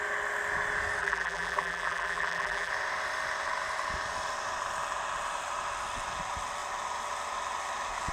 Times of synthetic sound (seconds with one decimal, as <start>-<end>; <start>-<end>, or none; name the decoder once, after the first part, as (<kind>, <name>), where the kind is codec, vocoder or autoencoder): 1.0-2.7 (vocoder, BigVGAN v2)